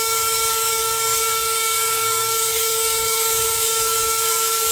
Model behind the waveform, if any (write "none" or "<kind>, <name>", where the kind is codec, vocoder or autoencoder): codec, DAC